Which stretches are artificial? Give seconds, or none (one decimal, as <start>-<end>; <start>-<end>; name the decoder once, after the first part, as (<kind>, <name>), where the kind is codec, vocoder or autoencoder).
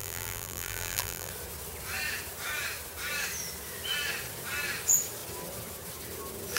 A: 0.0-1.3 (vocoder, BigVGAN v2)